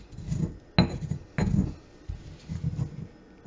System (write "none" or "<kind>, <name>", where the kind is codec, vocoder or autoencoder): none